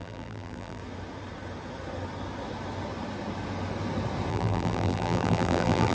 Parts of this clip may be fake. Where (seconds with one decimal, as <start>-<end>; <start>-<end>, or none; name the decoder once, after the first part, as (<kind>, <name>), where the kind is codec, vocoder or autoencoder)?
0.0-0.8 (vocoder, BigVGAN v2); 4.3-5.9